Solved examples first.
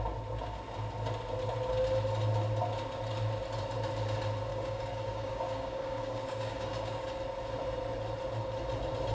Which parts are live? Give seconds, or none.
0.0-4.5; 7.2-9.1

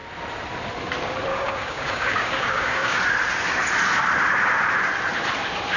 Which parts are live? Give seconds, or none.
0.0-1.3; 3.0-5.8

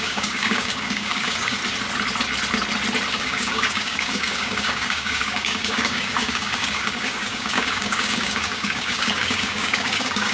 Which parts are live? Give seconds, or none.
1.6-3.1

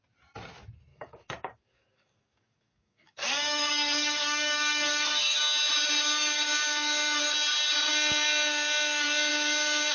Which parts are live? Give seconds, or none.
0.0-0.9; 5.4-9.9

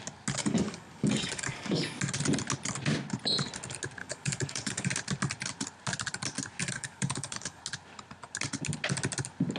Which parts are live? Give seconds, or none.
0.0-0.4; 2.0-4.0; 4.9-6.6; 7.6-9.6

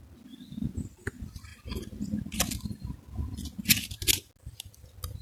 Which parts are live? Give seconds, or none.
0.0-5.2

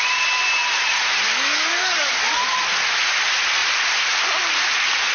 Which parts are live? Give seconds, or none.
0.0-1.3; 2.4-5.1